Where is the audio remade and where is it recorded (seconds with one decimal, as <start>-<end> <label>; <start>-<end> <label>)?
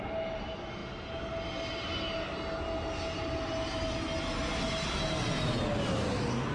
0.0-6.5 recorded